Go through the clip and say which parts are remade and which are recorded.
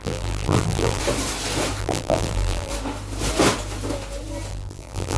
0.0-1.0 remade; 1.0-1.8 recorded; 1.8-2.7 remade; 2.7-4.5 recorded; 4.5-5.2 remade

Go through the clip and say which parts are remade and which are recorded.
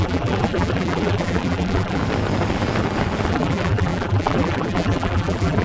0.0-2.0 remade; 2.0-3.3 recorded; 3.3-5.6 remade